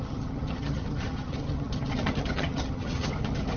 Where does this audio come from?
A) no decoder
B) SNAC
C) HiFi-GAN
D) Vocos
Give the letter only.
C